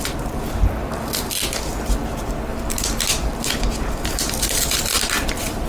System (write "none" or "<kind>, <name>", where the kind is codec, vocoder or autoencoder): none